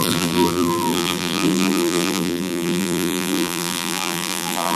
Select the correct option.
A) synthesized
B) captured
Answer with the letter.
A